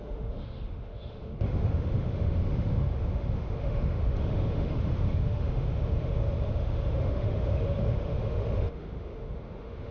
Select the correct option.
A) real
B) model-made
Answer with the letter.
B